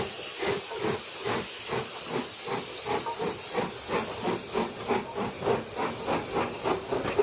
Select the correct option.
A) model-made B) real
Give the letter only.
B